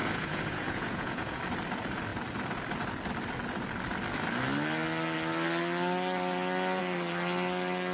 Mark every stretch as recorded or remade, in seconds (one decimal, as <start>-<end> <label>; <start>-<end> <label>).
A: 0.0-1.4 remade; 1.4-7.9 recorded